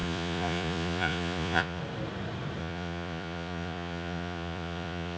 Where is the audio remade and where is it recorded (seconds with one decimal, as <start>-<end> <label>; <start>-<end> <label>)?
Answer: 0.0-1.8 remade; 1.8-2.6 recorded; 2.6-5.2 remade